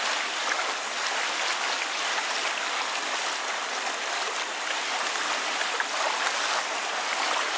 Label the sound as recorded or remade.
recorded